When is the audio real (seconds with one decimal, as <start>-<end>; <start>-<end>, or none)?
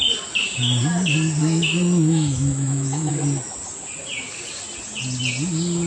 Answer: 0.0-1.4; 3.1-5.9